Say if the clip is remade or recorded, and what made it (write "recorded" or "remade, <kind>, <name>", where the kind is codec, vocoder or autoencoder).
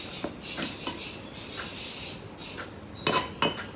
recorded